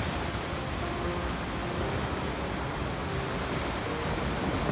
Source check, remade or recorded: recorded